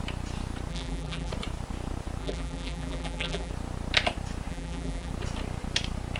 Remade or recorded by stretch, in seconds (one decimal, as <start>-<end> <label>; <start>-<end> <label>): 0.0-0.7 recorded; 0.7-1.3 remade; 1.3-2.2 recorded; 2.2-3.5 remade; 3.5-4.5 recorded; 4.5-5.1 remade; 5.1-6.2 recorded

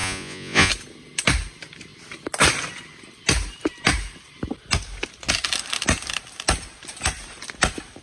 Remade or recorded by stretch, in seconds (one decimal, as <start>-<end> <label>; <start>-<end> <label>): 0.0-0.7 remade; 0.7-8.0 recorded